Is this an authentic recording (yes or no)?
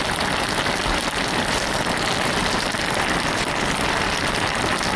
yes